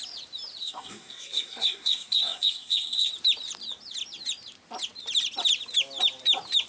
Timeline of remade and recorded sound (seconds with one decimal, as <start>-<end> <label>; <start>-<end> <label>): 0.0-0.6 recorded; 0.6-3.1 remade; 3.1-6.7 recorded